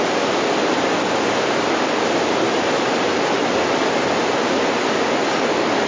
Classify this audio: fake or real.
real